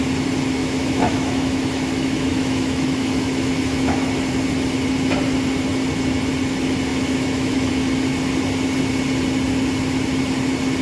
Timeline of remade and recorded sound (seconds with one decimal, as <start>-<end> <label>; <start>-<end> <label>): 0.0-0.6 recorded; 0.6-4.1 remade; 4.1-6.9 recorded; 6.9-7.7 remade; 7.7-10.8 recorded